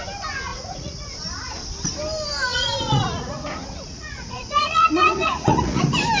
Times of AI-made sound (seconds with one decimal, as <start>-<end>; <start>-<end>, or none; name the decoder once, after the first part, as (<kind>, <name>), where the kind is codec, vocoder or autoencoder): 0.5-1.2 (vocoder, Vocos); 2.5-5.8